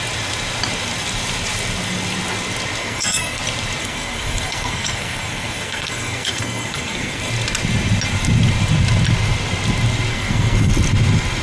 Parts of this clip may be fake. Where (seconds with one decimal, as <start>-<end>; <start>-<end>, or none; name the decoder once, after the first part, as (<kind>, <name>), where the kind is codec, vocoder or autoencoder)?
2.8-3.4 (codec, SNAC); 3.8-7.3; 10.1-10.7

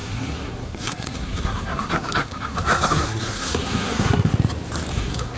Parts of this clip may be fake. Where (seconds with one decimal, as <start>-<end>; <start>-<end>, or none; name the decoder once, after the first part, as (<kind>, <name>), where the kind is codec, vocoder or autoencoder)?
0.0-4.3 (codec, SNAC); 4.9-5.4

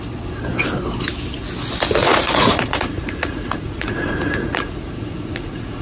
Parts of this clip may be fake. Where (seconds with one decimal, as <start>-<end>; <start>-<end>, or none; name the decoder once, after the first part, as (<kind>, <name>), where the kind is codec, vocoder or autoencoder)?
2.0-5.8 (vocoder, Vocos)